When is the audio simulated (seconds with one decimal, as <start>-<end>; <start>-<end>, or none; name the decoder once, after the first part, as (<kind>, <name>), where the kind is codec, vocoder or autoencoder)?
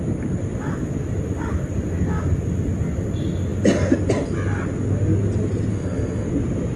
5.7-6.3 (codec, SNAC)